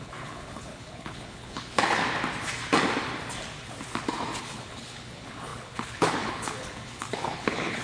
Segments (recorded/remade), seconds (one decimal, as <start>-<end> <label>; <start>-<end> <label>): 0.0-2.0 remade; 2.0-4.4 recorded; 4.4-7.8 remade